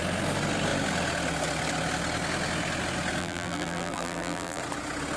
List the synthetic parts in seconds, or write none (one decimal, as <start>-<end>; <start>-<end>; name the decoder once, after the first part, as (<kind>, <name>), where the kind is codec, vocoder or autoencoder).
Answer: 3.2-4.6 (vocoder, BigVGAN v2)

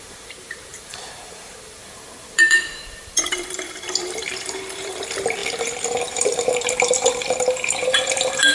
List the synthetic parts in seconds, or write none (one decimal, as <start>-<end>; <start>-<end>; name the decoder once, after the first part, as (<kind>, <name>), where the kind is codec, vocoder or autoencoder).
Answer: 0.0-8.5 (vocoder, BigVGAN v2)

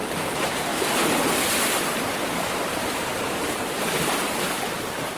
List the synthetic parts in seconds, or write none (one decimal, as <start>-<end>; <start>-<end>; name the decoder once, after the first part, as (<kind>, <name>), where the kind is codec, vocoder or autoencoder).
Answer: 0.0-0.7 (vocoder, BigVGAN v2); 2.2-5.2

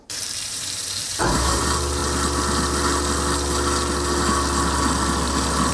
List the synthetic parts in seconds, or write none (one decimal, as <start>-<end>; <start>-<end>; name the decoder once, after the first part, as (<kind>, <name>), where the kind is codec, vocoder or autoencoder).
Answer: 0.0-2.0 (vocoder, BigVGAN v2)

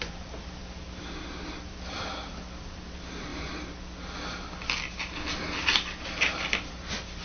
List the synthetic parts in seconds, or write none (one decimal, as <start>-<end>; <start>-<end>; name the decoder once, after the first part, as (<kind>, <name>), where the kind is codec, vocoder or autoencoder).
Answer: 0.0-3.3 (vocoder, BigVGAN v2); 5.4-7.2

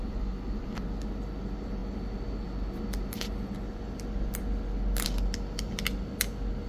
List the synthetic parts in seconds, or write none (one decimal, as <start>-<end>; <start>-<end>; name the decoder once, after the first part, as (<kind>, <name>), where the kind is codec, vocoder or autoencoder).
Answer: 0.0-0.6 (vocoder, BigVGAN v2)

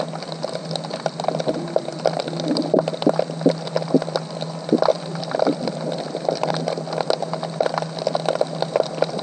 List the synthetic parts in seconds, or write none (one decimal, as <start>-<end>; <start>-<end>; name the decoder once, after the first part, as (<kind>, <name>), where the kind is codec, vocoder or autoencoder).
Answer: 4.9-6.5 (vocoder, BigVGAN v2)

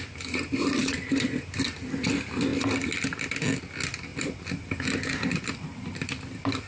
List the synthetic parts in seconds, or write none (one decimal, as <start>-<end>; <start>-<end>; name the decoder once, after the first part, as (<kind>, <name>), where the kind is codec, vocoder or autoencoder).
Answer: 4.1-6.7 (vocoder, BigVGAN v2)